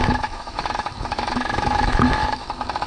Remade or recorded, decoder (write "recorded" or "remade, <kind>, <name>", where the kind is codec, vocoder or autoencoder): remade, autoencoder, DAC-VAE